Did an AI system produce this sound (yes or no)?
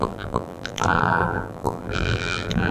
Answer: yes